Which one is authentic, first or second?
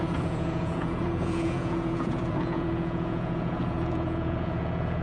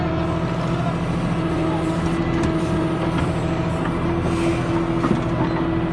second